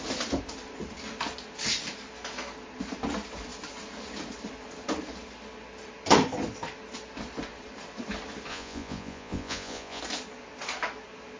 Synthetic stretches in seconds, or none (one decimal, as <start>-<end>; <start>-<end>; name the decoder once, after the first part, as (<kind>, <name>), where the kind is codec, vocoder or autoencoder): 8.5-10.0 (vocoder, Vocos)